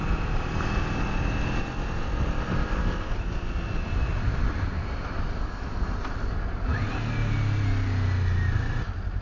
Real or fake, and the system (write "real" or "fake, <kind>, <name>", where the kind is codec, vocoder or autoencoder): real